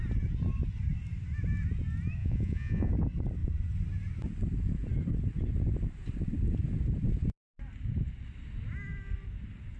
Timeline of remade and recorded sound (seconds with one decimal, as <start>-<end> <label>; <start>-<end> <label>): 0.0-2.2 recorded; 2.2-2.9 remade; 2.9-9.8 recorded